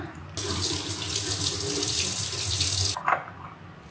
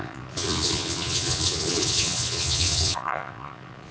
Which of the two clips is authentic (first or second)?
first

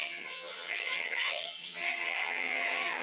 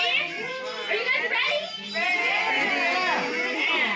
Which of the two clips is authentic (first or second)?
second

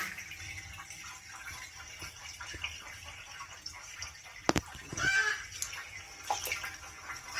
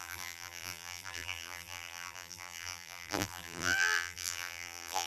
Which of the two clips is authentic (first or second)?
first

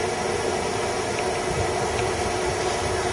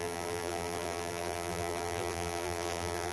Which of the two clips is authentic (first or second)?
first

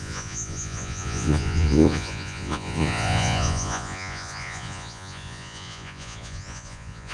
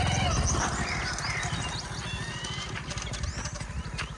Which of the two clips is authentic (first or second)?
second